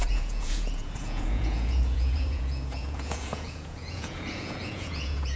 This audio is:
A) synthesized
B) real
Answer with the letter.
A